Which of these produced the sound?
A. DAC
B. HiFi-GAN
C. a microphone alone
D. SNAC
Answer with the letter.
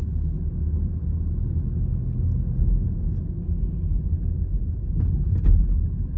C